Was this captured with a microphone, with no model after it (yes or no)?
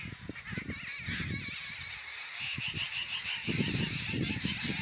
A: yes